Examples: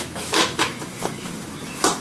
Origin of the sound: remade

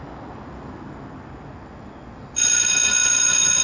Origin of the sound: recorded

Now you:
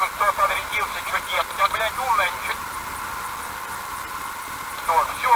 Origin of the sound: recorded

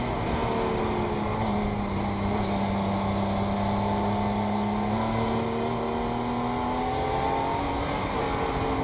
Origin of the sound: recorded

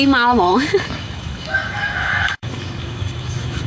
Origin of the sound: remade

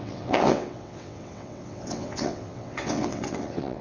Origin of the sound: remade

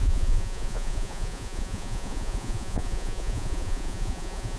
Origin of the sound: remade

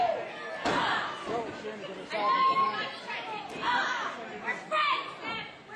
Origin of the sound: recorded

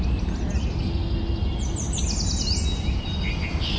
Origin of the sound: recorded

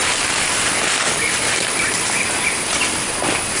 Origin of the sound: recorded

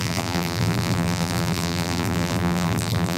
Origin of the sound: remade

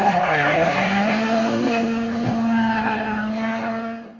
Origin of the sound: remade